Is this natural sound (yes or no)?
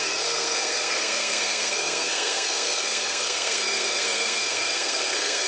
no